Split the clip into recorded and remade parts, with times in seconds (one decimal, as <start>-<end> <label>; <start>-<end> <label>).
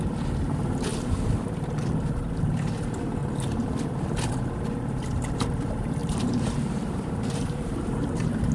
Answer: 0.0-6.0 recorded; 6.0-8.5 remade